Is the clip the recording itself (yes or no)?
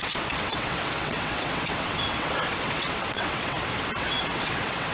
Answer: no